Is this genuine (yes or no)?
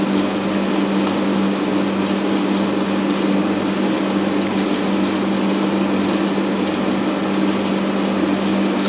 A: yes